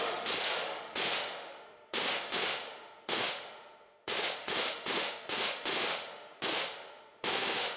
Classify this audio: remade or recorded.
remade